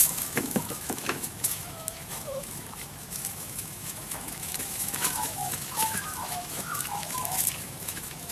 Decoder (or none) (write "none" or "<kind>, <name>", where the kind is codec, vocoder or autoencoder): autoencoder, DAC-VAE